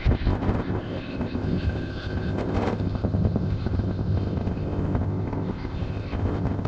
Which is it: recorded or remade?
remade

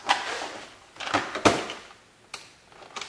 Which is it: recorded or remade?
recorded